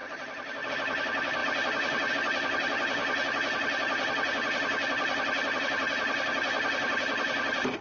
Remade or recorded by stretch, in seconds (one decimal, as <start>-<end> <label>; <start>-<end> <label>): 0.0-0.7 remade; 0.7-1.4 recorded; 1.4-2.1 remade; 2.1-3.0 recorded; 3.0-5.6 remade; 5.6-7.8 recorded